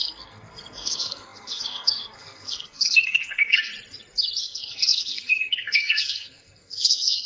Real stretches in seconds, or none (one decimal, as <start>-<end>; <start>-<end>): 3.7-4.4